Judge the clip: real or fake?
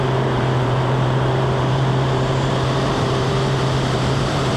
fake